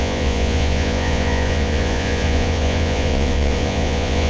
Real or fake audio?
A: fake